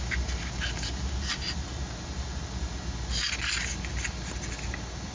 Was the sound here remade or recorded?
recorded